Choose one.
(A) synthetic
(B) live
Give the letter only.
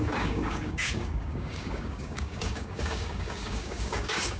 A